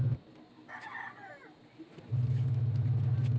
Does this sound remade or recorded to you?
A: recorded